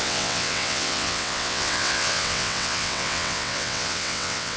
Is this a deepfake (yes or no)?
yes